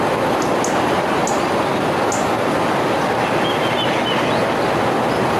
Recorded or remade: recorded